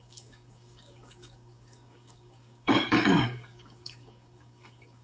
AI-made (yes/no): yes